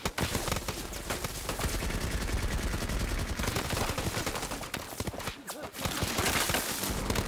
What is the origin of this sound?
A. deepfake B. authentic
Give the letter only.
B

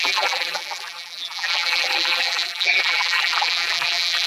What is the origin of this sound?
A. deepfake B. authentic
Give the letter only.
A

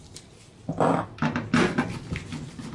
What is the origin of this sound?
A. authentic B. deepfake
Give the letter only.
A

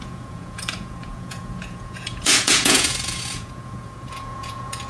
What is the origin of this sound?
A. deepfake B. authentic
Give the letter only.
A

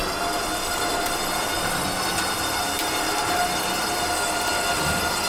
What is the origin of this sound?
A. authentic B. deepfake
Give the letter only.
A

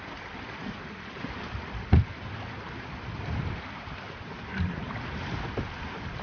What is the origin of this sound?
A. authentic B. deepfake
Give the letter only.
A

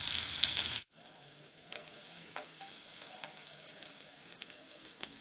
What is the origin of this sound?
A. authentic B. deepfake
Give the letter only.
B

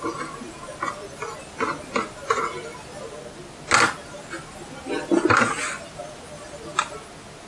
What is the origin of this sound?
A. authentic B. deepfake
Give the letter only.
A